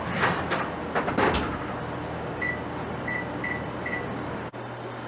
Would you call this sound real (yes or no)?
yes